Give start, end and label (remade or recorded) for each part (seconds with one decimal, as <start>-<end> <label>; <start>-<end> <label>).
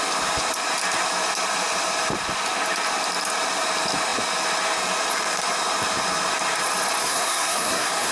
0.0-7.0 recorded; 7.0-8.1 remade